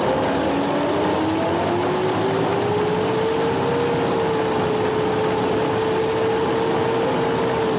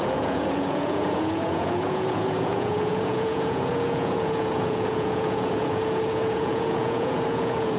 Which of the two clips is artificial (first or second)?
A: second